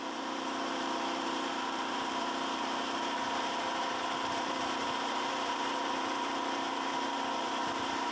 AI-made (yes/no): yes